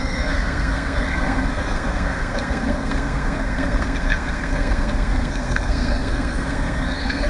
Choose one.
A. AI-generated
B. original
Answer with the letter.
A